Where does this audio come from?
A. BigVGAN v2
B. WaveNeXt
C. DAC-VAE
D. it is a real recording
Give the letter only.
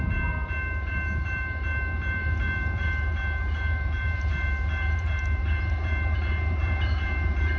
A